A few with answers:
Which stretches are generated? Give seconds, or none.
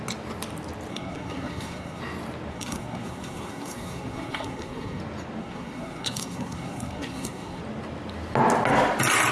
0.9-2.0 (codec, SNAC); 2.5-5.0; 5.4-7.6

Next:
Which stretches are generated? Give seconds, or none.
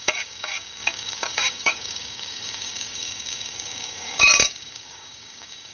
0.0-5.7 (codec, DAC)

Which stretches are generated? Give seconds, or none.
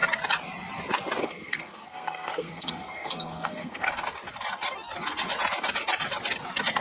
1.2-3.9 (codec, SNAC)